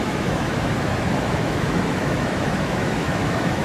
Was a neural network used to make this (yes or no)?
yes